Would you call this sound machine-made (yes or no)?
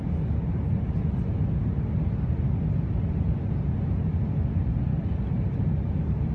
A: no